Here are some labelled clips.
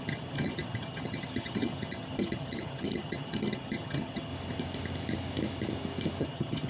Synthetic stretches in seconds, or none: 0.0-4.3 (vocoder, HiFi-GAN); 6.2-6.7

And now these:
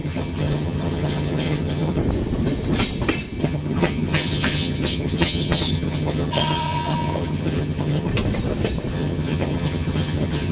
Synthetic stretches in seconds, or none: 0.0-2.0 (vocoder, HiFi-GAN); 3.4-8.1; 8.9-10.5

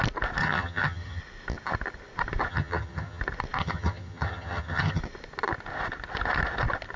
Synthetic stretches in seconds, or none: 0.4-1.2 (vocoder, HiFi-GAN); 2.5-3.2; 3.6-5.0

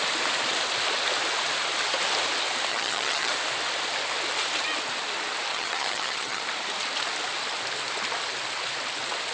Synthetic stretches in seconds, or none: 2.7-3.3 (vocoder, HiFi-GAN); 5.5-6.4